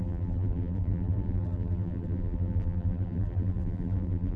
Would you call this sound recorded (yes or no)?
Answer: no